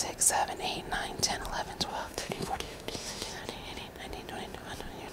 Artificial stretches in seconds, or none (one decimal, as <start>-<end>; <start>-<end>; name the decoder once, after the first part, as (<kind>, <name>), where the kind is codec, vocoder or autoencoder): 1.9-3.3 (autoencoder, DAC-VAE)